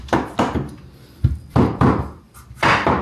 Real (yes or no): yes